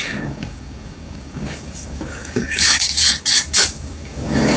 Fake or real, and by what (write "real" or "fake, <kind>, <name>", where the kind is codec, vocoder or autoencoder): fake, codec, DAC